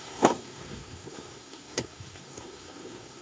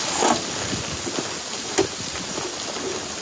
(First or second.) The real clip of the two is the second